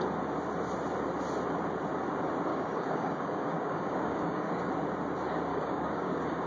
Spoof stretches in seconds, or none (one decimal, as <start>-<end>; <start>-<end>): 2.5-4.7; 5.5-6.5